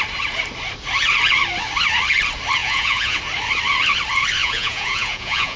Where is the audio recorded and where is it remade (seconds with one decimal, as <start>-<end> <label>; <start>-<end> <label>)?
0.0-2.6 recorded; 2.6-3.2 remade; 3.2-4.4 recorded; 4.4-5.6 remade